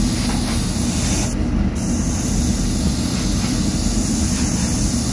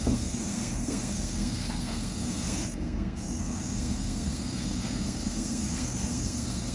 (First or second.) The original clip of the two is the first